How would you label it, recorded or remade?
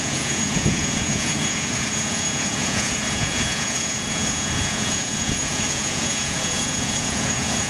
remade